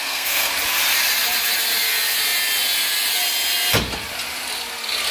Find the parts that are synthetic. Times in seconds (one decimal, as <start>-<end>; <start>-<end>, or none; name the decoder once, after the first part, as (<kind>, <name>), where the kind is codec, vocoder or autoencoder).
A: 0.0-0.5 (codec, SNAC)

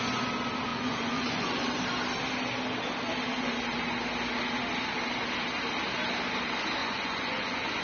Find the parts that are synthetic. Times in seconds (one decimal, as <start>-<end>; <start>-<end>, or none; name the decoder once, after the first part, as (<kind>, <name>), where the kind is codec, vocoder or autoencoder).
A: 0.7-1.7 (vocoder, Vocos); 6.8-7.8

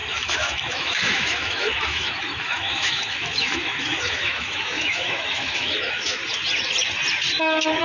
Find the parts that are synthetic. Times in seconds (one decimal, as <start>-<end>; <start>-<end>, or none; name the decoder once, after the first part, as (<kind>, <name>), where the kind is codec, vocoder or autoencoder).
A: 0.0-6.2 (autoencoder, DAC-VAE)

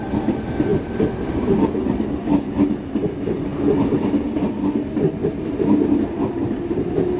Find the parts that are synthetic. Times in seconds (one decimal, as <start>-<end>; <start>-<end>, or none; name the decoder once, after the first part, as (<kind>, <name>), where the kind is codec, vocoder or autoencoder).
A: none

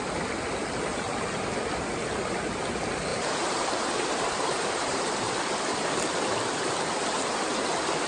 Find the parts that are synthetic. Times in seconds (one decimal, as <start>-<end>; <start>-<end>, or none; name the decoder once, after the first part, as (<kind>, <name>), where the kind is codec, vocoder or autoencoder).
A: 3.1-5.4 (vocoder, BigVGAN v2)